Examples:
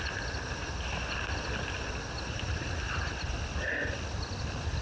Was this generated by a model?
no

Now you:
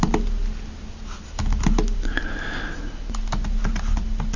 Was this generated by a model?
no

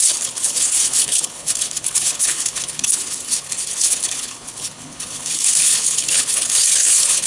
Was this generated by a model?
yes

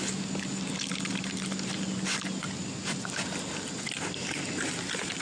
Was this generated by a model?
no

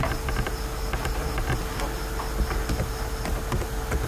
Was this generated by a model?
no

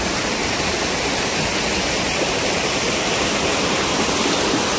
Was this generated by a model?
no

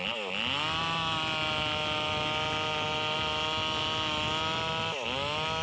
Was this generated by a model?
no